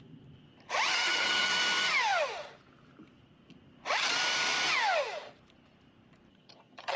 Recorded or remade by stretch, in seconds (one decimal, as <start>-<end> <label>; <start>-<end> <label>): 0.0-0.9 recorded; 0.9-1.5 remade; 1.5-6.3 recorded; 6.3-7.0 remade

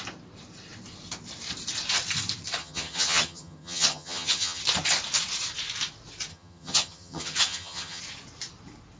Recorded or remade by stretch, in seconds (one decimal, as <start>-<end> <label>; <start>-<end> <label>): 0.0-2.6 recorded; 2.6-4.6 remade; 4.6-6.3 recorded; 6.3-8.0 remade; 8.0-9.0 recorded

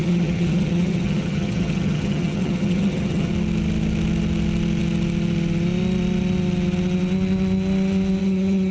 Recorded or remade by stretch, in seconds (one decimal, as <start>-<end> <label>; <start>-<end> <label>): 0.0-3.3 remade; 3.3-8.2 recorded; 8.2-8.7 remade

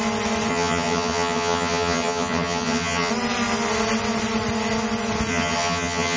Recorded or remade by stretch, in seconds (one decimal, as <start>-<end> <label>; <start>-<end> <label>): 0.0-0.5 recorded; 0.5-3.1 remade; 3.1-5.3 recorded; 5.3-6.2 remade

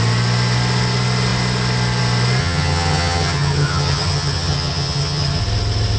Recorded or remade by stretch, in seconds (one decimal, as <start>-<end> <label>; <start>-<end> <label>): 0.0-2.4 recorded; 2.4-5.4 remade; 5.4-6.0 recorded

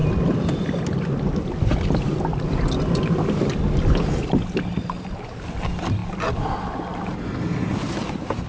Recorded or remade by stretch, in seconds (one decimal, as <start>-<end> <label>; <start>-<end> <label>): 0.0-8.5 recorded

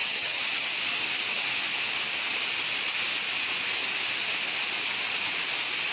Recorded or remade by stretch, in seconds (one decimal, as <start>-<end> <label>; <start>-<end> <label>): 0.0-0.7 remade; 0.7-5.9 recorded

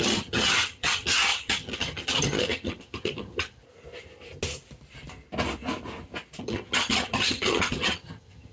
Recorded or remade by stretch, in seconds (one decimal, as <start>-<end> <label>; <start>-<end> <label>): 0.0-3.6 remade; 3.6-6.4 recorded; 6.4-8.5 remade